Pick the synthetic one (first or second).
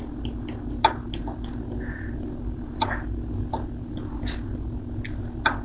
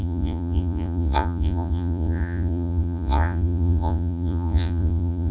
second